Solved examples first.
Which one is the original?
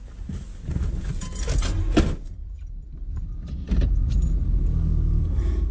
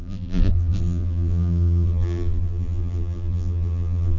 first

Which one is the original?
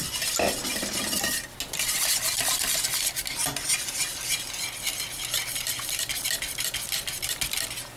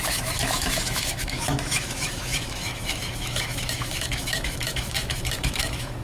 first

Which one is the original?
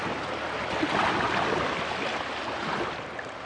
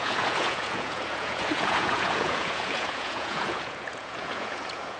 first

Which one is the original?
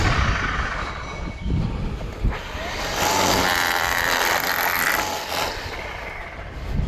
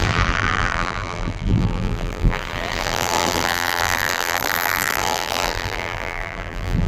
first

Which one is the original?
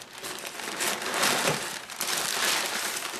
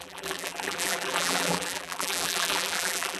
first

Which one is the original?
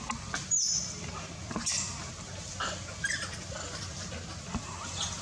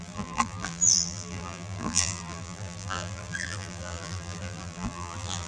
first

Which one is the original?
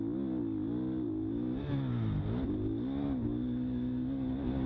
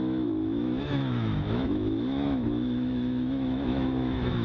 first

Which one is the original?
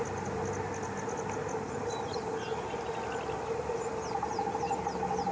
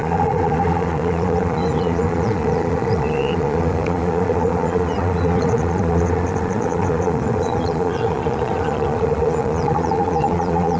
first